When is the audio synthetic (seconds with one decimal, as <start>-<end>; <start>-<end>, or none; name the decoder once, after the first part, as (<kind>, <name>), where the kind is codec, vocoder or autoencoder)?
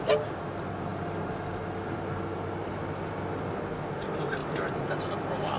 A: none